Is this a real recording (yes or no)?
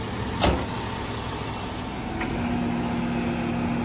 yes